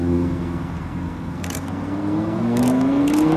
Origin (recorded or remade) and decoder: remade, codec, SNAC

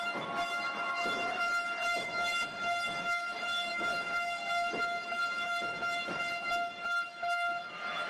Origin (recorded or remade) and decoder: remade, autoencoder, DAC-VAE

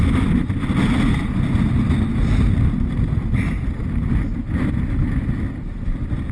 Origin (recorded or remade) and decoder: recorded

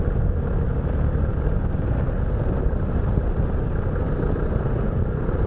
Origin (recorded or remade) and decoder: recorded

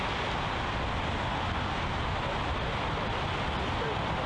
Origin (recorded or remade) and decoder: recorded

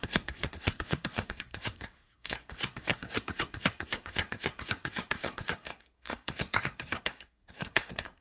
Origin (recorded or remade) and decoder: remade, codec, SNAC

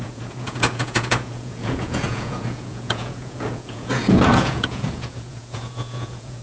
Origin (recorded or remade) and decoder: remade, vocoder, Vocos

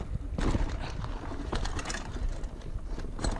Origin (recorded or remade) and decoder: recorded